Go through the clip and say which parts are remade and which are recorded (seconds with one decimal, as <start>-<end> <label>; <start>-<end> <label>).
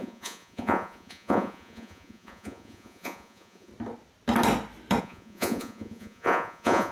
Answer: 0.0-3.7 remade; 3.7-5.0 recorded; 5.0-6.9 remade